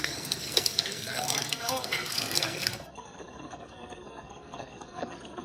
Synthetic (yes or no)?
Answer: yes